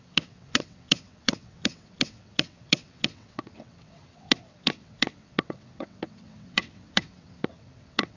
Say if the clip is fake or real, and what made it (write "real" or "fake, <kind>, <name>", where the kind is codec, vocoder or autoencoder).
fake, vocoder, WaveNeXt